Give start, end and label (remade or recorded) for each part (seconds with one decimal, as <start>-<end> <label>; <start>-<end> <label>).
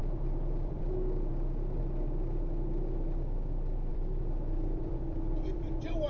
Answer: 0.0-0.8 remade; 0.8-3.9 recorded; 3.9-6.1 remade